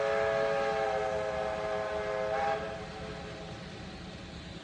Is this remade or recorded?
recorded